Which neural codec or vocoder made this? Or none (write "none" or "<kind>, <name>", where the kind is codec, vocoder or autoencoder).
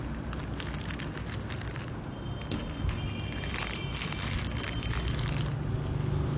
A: none